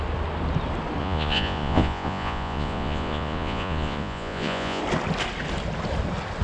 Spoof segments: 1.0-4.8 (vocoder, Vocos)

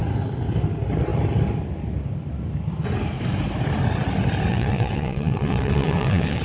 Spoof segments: 4.5-6.4 (vocoder, WaveNeXt)

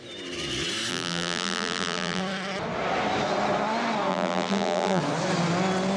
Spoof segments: 0.9-2.2 (vocoder, BigVGAN v2); 4.1-5.0

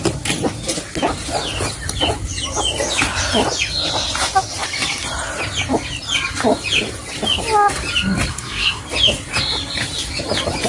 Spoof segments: 8.3-8.8 (codec, SNAC)

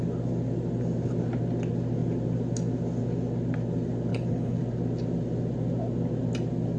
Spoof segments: 4.1-4.6 (codec, HILCodec)

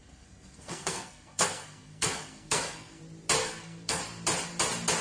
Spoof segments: 0.0-3.0 (codec, SNAC); 3.4-4.0